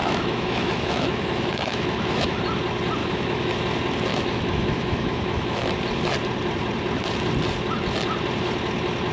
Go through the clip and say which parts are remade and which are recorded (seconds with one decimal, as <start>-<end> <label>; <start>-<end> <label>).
0.0-2.4 remade; 2.4-3.0 recorded; 3.0-3.5 remade; 3.5-4.1 recorded; 4.1-5.8 remade; 5.8-9.1 recorded